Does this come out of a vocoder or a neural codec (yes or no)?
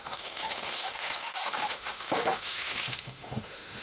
yes